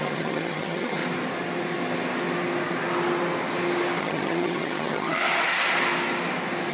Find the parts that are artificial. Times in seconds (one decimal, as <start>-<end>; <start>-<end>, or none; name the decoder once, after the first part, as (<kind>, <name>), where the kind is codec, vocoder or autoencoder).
0.0-1.0 (vocoder, HiFi-GAN); 4.0-5.2